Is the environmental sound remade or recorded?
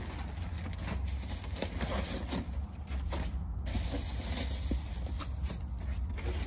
recorded